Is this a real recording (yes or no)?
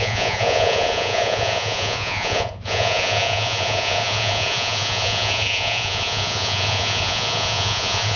no